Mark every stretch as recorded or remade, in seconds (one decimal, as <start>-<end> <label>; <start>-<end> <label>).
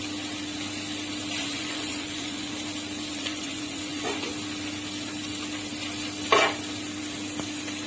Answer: 0.0-1.4 recorded; 1.4-2.5 remade; 2.5-3.1 recorded; 3.1-4.3 remade; 4.3-7.9 recorded